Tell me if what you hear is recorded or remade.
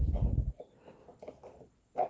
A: recorded